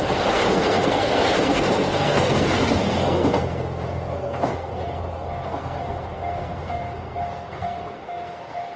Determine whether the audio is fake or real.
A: fake